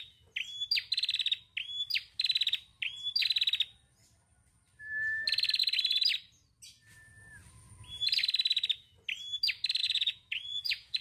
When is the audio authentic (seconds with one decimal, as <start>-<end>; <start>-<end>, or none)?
0.0-9.8